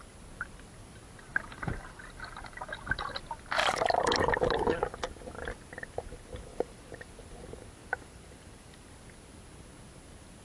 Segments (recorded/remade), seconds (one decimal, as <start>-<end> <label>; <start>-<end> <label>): 0.0-1.3 recorded; 1.3-2.0 remade; 2.0-3.6 recorded; 3.6-4.6 remade; 4.6-6.5 recorded; 6.5-7.1 remade; 7.1-7.8 recorded; 7.8-8.9 remade; 8.9-10.4 recorded